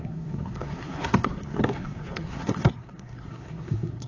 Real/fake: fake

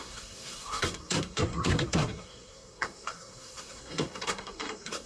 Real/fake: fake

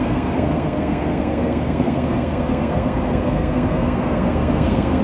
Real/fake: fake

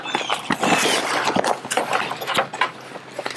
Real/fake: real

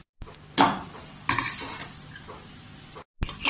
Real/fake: real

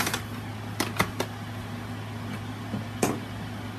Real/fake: real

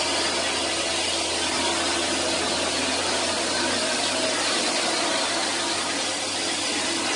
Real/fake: real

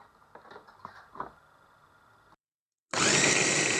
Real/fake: real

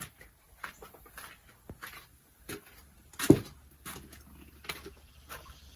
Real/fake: real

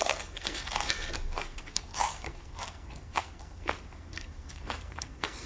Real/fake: fake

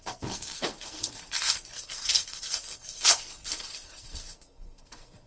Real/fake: fake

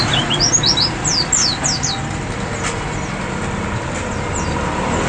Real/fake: real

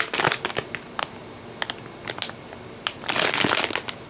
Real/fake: real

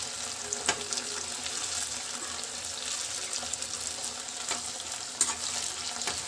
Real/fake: real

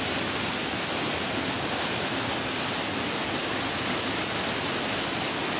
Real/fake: real